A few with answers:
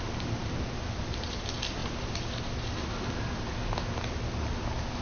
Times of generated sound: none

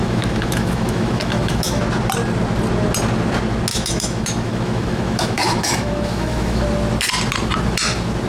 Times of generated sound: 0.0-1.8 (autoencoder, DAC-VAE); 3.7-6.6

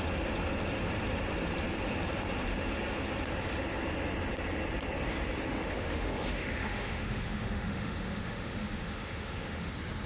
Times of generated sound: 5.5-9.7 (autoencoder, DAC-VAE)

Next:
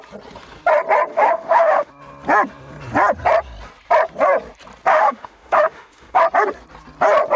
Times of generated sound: 1.1-1.9 (autoencoder, DAC-VAE); 4.9-6.2